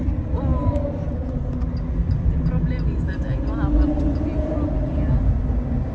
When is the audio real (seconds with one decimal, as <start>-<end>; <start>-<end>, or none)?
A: 0.0-5.9